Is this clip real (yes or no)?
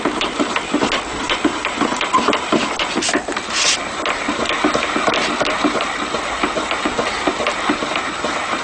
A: yes